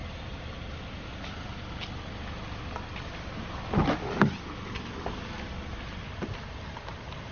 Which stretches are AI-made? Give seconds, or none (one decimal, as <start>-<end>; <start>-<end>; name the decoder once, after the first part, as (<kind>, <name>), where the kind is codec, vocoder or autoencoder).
none